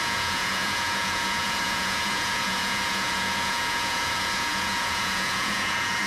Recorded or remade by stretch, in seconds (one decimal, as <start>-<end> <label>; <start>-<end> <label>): 0.0-6.1 remade